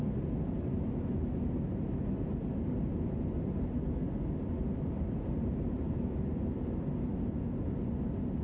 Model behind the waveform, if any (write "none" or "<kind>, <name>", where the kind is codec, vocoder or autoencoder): none